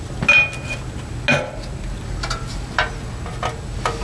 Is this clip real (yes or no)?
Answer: yes